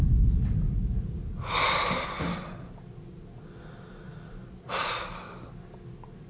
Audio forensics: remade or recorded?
recorded